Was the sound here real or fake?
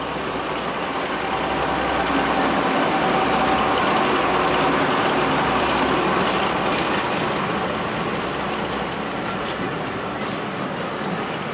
real